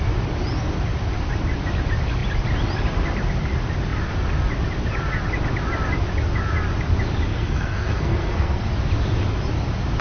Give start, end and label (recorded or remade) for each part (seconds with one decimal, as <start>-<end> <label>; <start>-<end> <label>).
0.0-7.3 recorded; 7.3-8.7 remade; 8.7-10.0 recorded